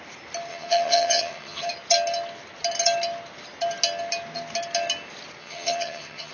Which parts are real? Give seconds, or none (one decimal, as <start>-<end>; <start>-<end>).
0.0-0.5; 1.7-5.4